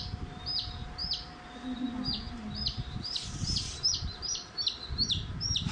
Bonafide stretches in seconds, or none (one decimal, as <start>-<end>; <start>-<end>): 1.0-2.3